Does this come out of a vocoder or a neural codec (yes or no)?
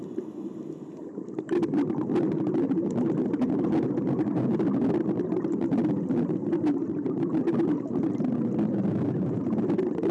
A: no